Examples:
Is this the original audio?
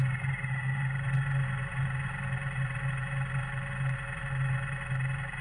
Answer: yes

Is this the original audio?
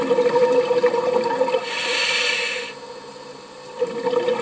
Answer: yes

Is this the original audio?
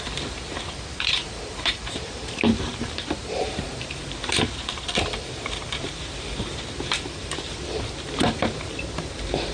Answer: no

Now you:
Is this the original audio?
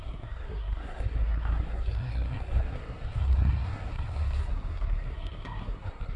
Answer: no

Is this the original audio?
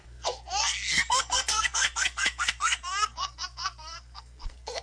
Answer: no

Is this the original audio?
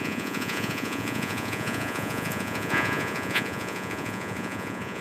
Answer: no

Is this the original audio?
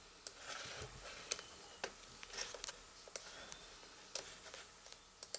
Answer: yes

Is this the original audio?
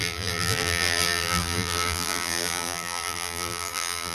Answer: no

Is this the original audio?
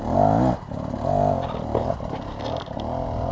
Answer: yes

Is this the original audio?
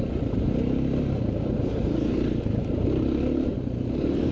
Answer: no